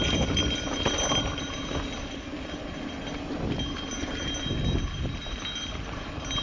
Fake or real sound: real